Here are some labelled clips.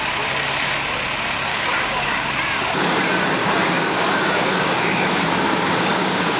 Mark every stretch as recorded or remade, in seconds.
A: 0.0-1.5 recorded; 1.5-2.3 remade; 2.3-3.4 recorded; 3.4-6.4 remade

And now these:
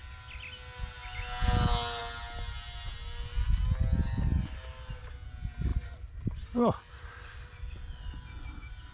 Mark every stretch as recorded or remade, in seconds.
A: 0.0-5.7 recorded; 5.7-7.7 remade; 7.7-8.9 recorded

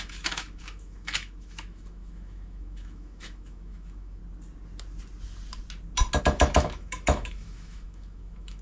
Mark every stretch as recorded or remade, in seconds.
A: 0.0-4.2 remade; 4.2-6.2 recorded; 6.2-8.6 remade

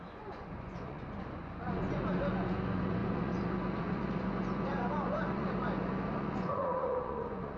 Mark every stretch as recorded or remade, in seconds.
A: 0.0-7.6 remade

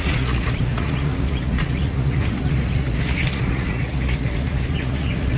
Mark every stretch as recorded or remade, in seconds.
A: 0.0-5.4 remade

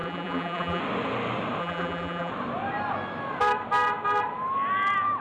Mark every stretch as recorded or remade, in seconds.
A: 0.0-0.8 remade; 0.8-1.6 recorded; 1.6-2.3 remade; 2.3-5.2 recorded

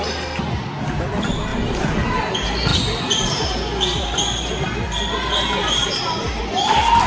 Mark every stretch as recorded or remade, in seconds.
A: 0.0-1.5 recorded; 1.5-2.3 remade; 2.3-5.6 recorded; 5.6-6.4 remade; 6.4-7.1 recorded

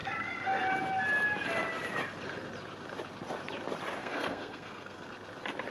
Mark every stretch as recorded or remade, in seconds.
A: 0.0-4.0 recorded; 4.0-5.1 remade; 5.1-5.7 recorded